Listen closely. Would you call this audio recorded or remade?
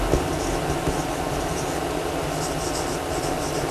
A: recorded